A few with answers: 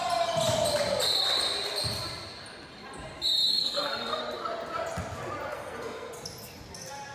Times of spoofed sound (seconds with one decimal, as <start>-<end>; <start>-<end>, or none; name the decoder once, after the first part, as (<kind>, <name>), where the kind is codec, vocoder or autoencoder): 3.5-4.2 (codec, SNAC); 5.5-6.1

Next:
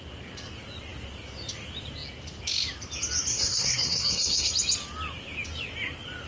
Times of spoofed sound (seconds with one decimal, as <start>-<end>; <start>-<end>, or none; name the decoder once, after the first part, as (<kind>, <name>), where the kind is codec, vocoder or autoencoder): 3.3-4.5 (codec, SNAC)

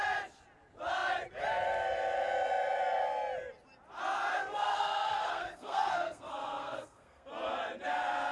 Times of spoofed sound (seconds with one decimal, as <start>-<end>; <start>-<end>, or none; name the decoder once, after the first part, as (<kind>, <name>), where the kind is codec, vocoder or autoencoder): 4.3-7.3 (codec, SNAC)

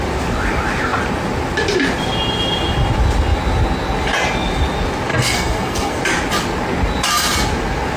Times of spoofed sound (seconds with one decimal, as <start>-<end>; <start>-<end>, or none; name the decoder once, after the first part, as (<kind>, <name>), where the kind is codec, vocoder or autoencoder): 5.1-6.0 (codec, SNAC)

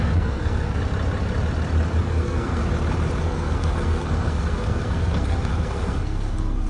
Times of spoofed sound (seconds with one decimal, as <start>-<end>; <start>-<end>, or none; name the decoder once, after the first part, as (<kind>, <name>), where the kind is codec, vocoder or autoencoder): 0.0-0.8 (codec, SNAC); 2.0-2.6; 3.2-6.7

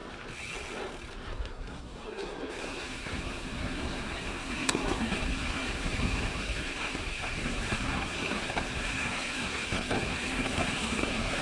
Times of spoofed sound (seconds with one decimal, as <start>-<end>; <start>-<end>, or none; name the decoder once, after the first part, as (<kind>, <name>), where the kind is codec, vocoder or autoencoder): 1.3-11.4 (codec, SNAC)

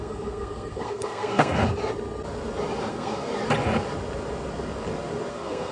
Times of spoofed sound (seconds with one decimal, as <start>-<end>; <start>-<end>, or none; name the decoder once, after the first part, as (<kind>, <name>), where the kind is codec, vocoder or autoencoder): 0.0-1.6 (codec, SNAC); 2.9-3.3; 5.3-5.7

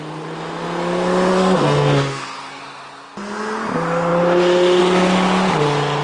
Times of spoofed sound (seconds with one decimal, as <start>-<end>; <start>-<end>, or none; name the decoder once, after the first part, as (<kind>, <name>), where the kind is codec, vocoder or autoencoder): 1.3-2.6 (codec, SNAC)